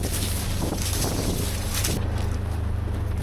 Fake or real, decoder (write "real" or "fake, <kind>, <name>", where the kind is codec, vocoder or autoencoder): real